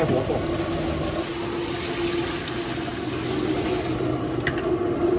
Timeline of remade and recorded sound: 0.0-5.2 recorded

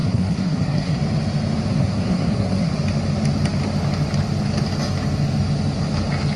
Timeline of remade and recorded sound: 0.0-1.0 remade; 1.0-1.7 recorded; 1.7-2.7 remade; 2.7-6.4 recorded